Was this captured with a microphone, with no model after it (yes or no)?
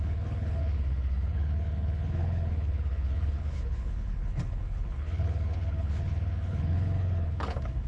no